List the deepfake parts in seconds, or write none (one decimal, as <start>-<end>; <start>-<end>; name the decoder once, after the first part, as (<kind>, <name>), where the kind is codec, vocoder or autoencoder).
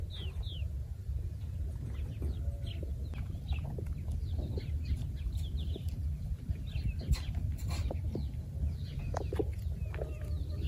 none